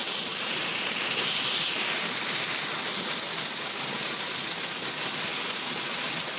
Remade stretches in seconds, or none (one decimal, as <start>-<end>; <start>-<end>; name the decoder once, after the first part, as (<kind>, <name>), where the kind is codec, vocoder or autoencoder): 0.0-2.6 (vocoder, BigVGAN v2)